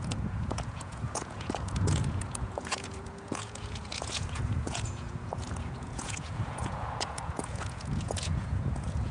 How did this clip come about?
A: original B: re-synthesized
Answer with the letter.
B